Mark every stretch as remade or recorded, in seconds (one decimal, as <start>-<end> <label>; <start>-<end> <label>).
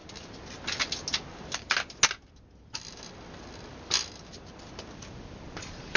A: 0.0-6.0 recorded